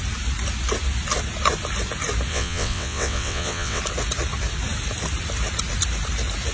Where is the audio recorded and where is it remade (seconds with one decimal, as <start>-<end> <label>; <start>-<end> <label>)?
0.0-2.3 recorded; 2.3-3.8 remade; 3.8-6.5 recorded